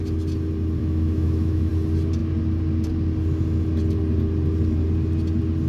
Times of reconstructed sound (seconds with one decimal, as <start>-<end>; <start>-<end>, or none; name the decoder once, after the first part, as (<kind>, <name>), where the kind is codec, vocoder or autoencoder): 0.8-1.7 (autoencoder, DAC-VAE)